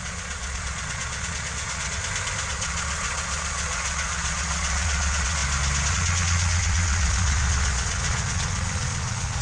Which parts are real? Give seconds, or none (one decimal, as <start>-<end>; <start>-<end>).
2.0-2.5; 5.4-5.9